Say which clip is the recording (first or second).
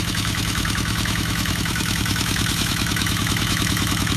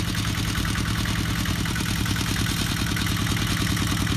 second